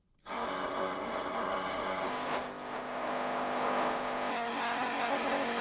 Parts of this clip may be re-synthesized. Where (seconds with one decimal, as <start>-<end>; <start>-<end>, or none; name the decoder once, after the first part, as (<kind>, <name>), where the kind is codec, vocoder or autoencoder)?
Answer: 0.0-2.1 (codec, SNAC); 4.3-5.6

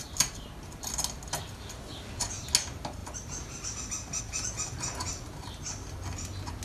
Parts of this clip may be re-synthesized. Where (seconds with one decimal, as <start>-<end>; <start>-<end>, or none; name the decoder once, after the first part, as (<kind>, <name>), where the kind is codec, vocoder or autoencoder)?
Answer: none

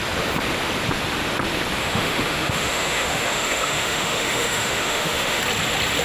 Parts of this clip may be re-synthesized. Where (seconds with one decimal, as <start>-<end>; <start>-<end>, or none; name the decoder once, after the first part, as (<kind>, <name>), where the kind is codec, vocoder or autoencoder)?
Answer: 1.8-5.4 (autoencoder, DAC-VAE)

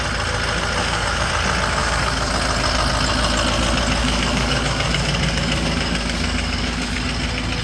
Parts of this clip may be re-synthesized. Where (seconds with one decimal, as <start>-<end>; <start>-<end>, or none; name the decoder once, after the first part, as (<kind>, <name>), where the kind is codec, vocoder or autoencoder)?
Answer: 0.8-1.3 (codec, DAC); 1.8-2.3; 4.0-7.0